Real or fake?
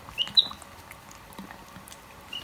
real